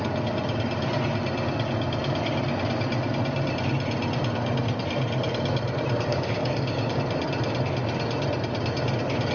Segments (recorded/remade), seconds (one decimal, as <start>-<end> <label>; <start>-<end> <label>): 0.0-6.1 recorded; 6.1-7.0 remade; 7.0-9.3 recorded